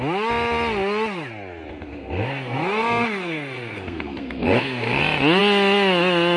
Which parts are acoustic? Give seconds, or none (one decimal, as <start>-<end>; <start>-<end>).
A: 0.0-1.7; 5.0-6.4